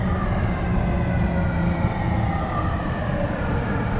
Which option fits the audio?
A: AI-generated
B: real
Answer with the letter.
B